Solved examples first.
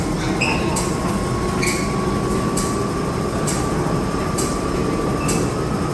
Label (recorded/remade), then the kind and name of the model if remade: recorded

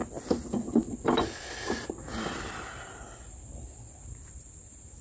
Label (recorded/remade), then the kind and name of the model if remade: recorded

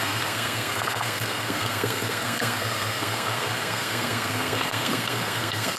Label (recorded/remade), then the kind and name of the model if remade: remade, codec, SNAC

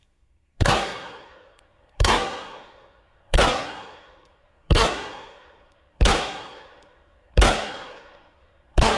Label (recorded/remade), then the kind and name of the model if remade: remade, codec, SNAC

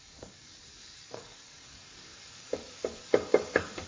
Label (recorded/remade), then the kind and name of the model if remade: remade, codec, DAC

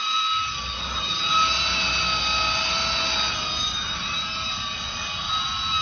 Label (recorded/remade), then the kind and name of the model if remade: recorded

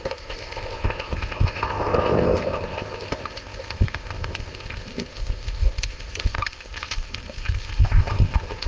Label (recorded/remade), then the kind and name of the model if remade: remade, codec, ZipCodec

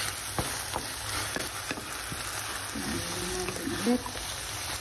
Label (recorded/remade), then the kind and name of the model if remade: recorded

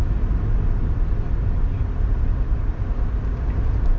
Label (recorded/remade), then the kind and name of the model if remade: recorded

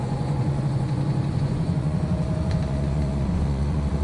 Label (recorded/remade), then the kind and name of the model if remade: remade, vocoder, Vocos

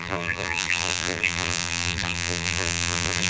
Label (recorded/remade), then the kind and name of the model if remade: remade, vocoder, BigVGAN v2